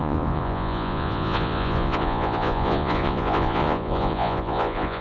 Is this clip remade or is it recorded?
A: remade